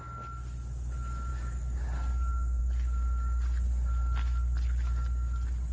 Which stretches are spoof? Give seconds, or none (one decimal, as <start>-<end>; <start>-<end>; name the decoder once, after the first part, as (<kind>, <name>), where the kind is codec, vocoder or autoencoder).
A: none